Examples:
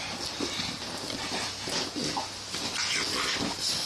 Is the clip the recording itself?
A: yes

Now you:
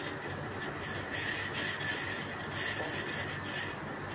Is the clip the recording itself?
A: yes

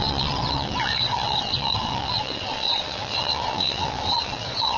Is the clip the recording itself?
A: no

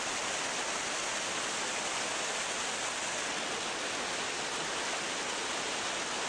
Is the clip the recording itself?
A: yes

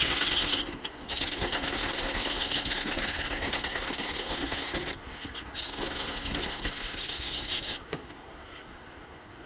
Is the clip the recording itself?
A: no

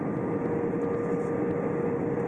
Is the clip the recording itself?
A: yes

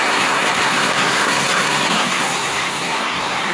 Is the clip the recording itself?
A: no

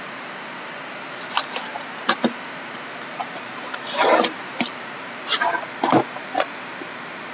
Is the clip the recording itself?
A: no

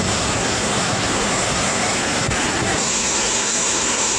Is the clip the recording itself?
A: no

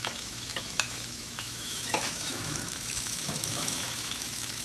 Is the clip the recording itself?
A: no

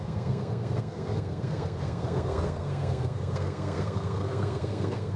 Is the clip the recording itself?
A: no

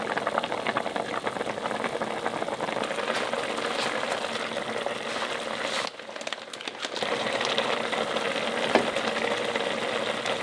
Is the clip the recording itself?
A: yes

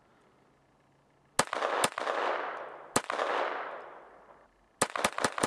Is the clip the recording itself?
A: yes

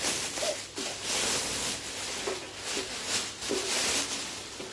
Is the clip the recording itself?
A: yes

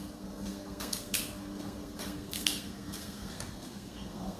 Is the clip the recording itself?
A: no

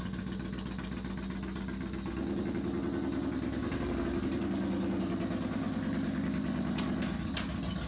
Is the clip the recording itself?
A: yes